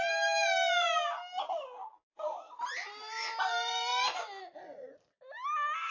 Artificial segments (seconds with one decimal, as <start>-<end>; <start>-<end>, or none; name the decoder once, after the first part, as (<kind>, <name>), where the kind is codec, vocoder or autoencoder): none